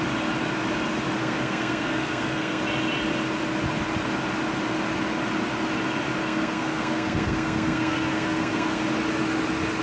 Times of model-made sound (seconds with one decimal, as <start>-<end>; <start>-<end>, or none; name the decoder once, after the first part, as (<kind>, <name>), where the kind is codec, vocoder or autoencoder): 1.2-2.6 (codec, SNAC); 6.2-8.8